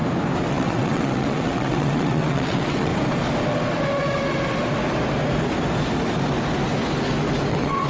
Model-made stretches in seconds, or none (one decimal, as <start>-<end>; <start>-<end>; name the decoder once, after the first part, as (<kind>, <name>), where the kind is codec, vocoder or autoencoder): 0.5-2.9 (vocoder, WaveNeXt); 7.5-7.9